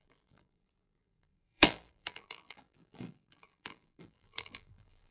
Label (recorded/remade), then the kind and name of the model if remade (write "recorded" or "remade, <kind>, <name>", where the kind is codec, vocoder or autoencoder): remade, vocoder, BigVGAN v2